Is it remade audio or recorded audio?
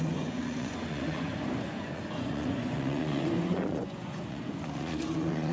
remade